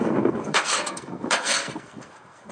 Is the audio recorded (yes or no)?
no